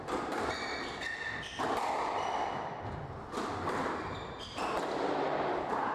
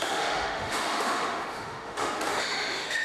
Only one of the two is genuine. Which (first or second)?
first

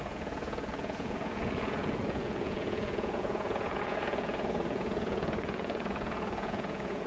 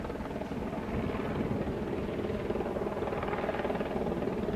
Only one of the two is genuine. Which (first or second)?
second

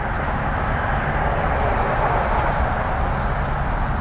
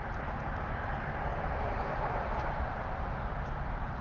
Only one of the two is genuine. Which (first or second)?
first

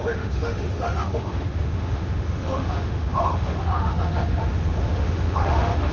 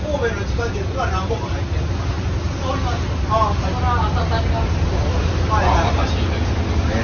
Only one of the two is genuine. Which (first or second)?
second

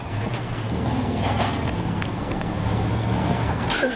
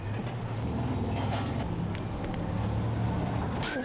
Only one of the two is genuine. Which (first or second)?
second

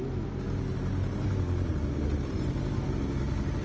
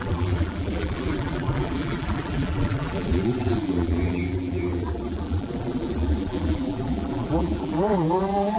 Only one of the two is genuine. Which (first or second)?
first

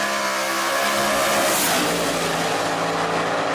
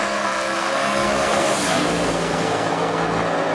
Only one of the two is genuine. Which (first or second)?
first